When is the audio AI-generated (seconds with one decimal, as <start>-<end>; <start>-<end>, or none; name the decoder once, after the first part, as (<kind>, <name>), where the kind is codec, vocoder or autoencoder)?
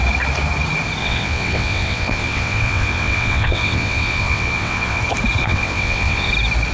1.0-5.0 (vocoder, WaveNeXt); 5.4-6.3